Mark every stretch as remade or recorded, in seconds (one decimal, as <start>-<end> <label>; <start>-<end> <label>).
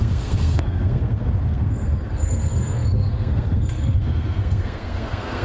0.0-5.4 remade